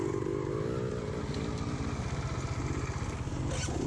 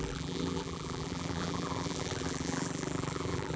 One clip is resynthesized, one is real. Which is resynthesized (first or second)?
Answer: second